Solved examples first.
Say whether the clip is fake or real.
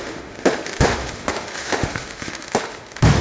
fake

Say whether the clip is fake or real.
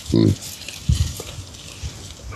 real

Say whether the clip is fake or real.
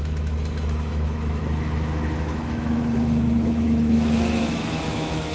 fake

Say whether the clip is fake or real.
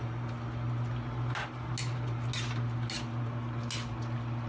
real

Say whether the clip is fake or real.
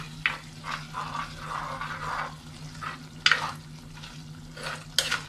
real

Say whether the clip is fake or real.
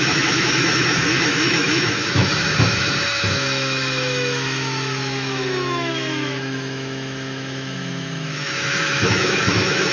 fake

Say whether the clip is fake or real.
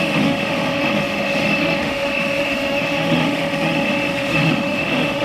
fake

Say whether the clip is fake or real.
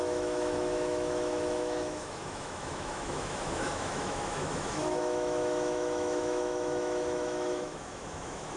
fake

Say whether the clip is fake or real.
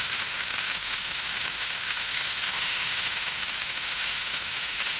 fake